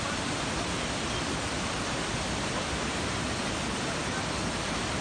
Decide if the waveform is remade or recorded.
recorded